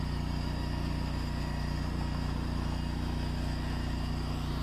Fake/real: real